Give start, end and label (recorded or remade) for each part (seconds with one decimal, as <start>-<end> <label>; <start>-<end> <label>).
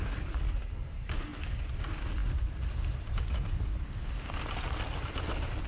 0.0-5.7 recorded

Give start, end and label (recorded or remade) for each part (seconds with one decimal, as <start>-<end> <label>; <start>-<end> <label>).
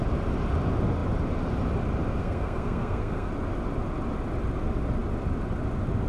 0.0-2.2 recorded; 2.2-3.3 remade; 3.3-6.1 recorded